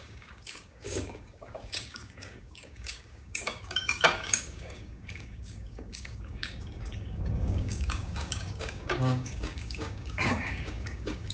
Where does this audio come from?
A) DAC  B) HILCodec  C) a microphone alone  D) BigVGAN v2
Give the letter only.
A